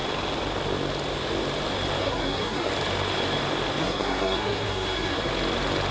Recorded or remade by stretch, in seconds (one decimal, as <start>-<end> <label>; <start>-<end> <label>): 0.0-2.0 recorded; 2.0-2.7 remade; 2.7-3.8 recorded; 3.8-5.3 remade; 5.3-5.9 recorded